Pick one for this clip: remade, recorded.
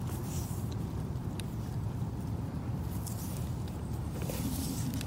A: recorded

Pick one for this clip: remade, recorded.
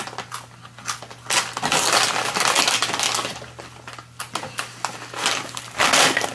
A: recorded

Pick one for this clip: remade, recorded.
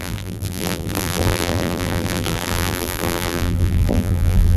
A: remade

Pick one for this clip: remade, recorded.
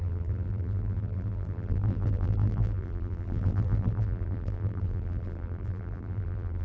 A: remade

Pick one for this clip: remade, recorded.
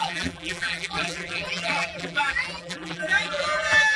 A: remade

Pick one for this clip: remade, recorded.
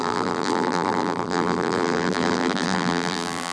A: remade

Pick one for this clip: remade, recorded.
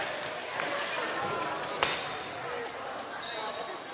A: recorded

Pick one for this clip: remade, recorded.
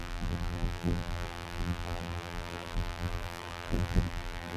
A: remade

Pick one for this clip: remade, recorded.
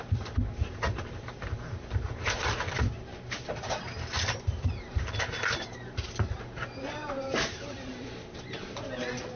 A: remade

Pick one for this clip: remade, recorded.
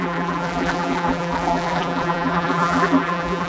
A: remade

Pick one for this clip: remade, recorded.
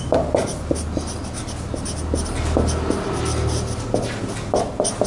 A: recorded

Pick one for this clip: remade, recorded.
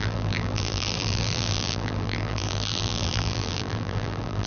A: remade